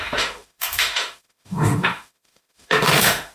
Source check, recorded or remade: remade